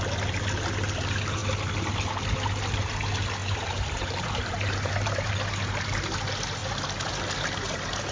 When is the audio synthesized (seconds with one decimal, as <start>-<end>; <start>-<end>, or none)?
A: 3.4-5.3